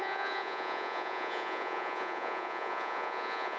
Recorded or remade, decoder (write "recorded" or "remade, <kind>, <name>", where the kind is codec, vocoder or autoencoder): remade, vocoder, Vocos